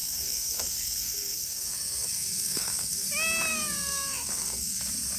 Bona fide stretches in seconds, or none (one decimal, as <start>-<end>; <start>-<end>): 3.1-3.5; 4.8-5.2